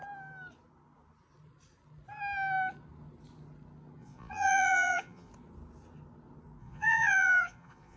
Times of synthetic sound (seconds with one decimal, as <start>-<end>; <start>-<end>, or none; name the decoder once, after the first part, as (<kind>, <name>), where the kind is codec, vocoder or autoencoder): 4.0-5.3 (vocoder, Vocos); 6.6-8.0

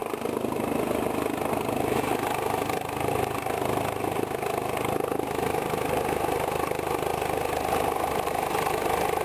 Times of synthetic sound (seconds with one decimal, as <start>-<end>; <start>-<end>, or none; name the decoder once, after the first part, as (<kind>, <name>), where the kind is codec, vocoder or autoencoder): none

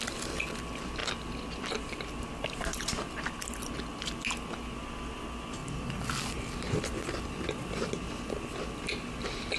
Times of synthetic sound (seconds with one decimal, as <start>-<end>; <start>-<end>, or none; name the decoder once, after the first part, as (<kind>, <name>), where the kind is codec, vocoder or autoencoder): 1.0-3.7 (vocoder, BigVGAN v2); 5.6-7.6

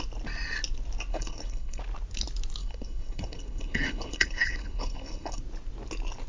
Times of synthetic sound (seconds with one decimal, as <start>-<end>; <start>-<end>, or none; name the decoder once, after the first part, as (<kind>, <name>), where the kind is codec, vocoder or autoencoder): 1.1-1.8 (codec, HILCodec); 2.6-5.4